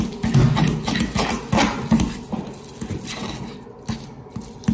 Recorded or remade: recorded